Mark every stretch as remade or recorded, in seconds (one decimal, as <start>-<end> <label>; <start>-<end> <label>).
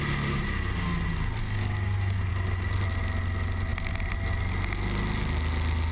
0.0-1.4 recorded; 1.4-2.3 remade; 2.3-5.9 recorded